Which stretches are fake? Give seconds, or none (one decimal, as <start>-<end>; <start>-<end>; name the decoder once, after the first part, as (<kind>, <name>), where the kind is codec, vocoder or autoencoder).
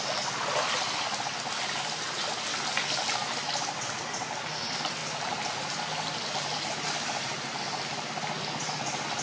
none